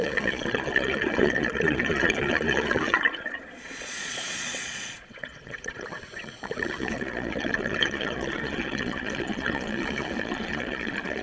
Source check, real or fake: fake